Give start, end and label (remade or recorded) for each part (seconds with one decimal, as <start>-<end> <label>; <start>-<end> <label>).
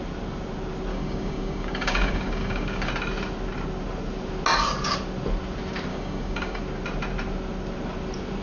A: 0.0-0.9 recorded; 0.9-2.9 remade; 2.9-5.9 recorded; 5.9-6.6 remade; 6.6-8.4 recorded